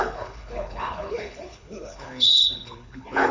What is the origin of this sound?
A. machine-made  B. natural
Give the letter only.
A